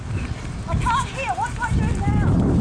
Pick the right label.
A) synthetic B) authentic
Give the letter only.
B